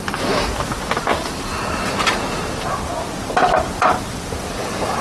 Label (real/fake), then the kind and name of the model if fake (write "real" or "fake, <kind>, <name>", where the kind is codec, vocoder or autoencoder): real